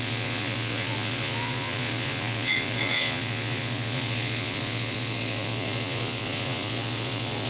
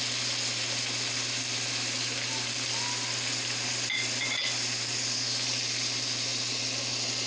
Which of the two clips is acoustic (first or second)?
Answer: second